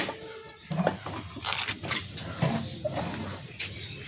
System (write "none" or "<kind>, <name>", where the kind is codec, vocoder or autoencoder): none